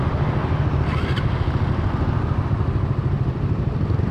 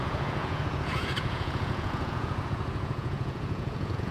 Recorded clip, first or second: first